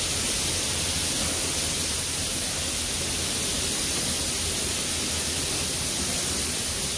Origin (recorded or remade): recorded